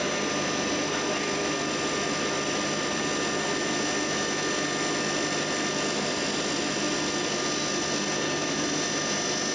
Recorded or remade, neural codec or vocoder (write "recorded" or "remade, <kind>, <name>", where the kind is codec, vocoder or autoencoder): recorded